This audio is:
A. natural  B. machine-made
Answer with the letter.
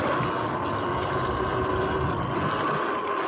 A